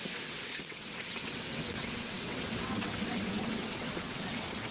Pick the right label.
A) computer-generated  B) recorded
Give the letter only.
A